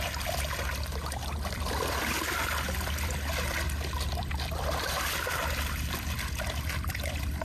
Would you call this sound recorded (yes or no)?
no